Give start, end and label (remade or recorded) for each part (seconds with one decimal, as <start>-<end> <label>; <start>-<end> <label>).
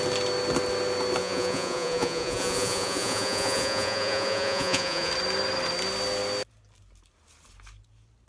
0.0-1.2 recorded; 1.2-5.1 remade; 5.1-8.3 recorded